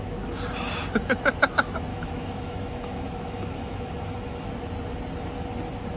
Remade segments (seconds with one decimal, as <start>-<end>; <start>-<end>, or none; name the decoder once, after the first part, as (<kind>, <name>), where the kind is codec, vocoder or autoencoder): 1.9-4.5 (autoencoder, DAC-VAE)